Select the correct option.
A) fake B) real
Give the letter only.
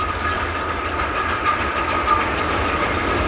B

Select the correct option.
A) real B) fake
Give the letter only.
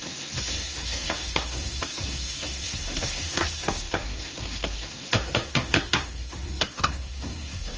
B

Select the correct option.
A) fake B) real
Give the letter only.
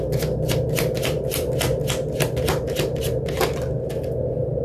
B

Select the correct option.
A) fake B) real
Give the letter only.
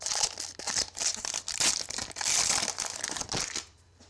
B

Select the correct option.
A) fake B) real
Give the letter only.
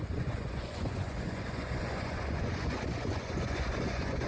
A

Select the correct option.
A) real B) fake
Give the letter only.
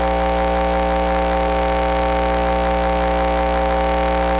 A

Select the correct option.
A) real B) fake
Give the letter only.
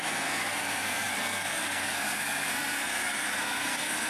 B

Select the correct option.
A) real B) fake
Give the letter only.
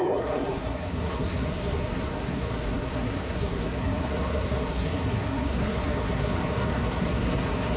B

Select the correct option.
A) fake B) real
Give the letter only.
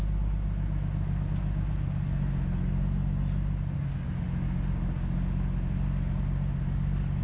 B